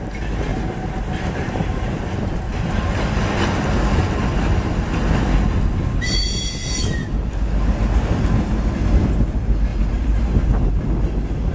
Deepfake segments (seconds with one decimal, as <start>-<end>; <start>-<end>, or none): 0.5-2.9; 9.7-10.7